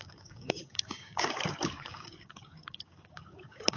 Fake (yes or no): yes